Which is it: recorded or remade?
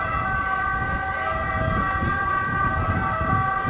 recorded